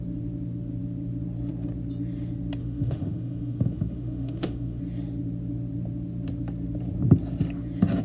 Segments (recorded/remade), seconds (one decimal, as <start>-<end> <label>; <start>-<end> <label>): 0.0-2.6 recorded; 2.6-4.8 remade; 4.8-8.0 recorded